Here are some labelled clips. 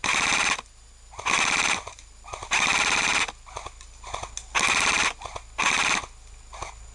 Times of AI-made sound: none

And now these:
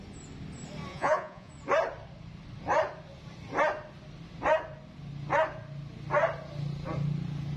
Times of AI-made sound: 0.9-1.5